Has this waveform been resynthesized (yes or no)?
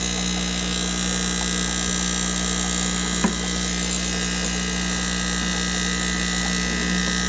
no